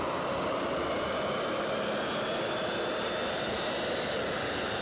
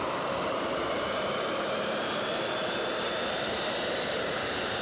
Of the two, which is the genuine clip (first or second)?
first